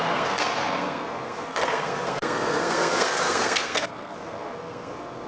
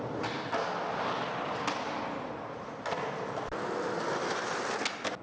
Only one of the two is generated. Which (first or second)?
first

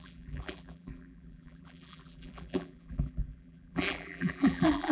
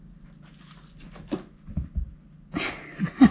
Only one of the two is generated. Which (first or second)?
first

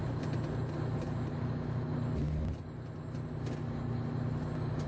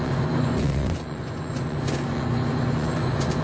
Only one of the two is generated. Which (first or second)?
second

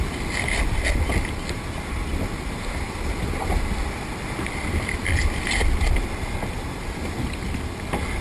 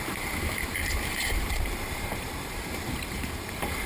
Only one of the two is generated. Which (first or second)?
second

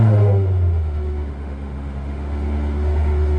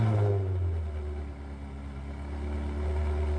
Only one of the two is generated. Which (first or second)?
first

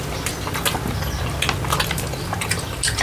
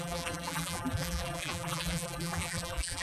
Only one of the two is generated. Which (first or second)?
second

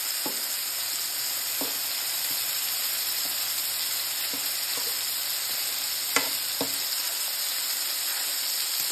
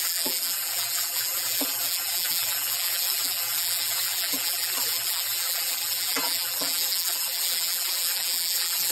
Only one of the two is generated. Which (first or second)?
second